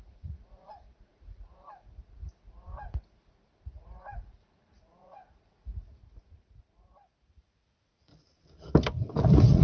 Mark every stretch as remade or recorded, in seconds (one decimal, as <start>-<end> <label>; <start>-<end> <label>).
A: 0.0-8.1 remade; 8.1-9.2 recorded; 9.2-9.6 remade